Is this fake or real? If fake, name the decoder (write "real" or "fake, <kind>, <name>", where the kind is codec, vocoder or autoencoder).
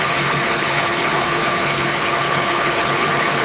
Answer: fake, codec, HILCodec